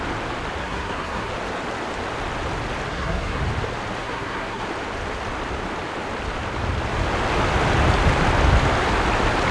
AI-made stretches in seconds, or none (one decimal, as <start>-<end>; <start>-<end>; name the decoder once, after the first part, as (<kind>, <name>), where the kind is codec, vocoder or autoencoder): 0.6-1.3 (codec, SNAC); 2.9-3.4; 4.0-4.6